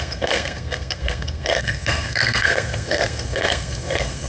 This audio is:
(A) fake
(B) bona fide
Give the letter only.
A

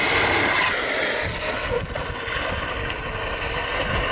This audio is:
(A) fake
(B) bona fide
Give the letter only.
B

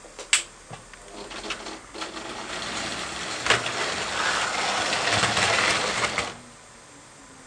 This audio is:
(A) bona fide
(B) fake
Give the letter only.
A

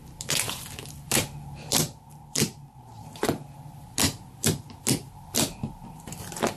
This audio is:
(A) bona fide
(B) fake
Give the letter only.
B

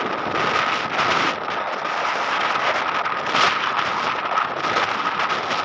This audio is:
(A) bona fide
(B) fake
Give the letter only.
A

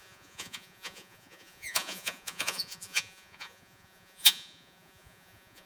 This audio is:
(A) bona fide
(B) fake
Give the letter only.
B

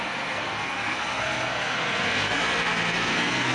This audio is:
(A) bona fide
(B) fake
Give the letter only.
B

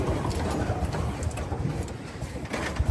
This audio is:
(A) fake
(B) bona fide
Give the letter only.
A